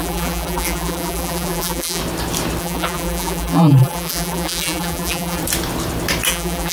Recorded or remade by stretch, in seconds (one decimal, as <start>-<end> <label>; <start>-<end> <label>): 0.0-2.0 remade; 2.0-2.6 recorded; 2.6-5.4 remade; 5.4-6.3 recorded; 6.3-6.7 remade